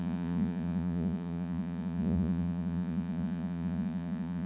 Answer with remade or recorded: remade